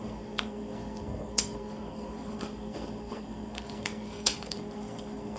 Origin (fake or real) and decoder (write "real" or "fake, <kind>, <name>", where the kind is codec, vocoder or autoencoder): fake, codec, SNAC